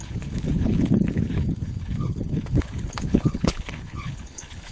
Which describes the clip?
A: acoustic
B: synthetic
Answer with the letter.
B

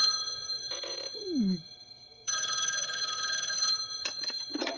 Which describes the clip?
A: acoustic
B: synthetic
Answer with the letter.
B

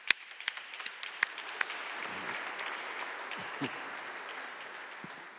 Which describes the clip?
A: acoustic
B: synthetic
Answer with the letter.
A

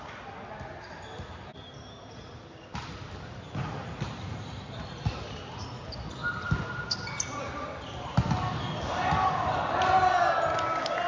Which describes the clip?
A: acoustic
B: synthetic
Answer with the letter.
A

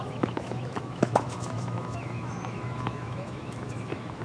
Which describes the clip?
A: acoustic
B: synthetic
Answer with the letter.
B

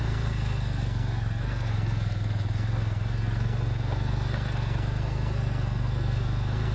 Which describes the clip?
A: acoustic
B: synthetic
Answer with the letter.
B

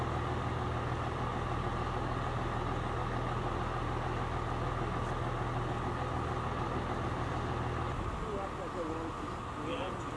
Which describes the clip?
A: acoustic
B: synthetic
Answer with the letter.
A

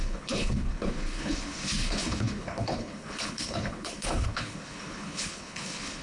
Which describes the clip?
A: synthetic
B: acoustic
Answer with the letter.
A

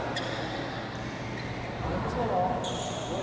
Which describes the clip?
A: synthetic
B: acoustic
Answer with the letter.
B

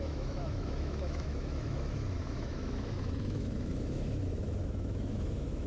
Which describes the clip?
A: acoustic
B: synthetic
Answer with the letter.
B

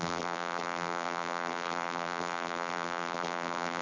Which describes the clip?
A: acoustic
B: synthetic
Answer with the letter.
B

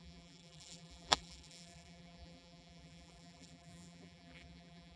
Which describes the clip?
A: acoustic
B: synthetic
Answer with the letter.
B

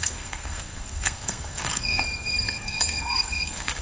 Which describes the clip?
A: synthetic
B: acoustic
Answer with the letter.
A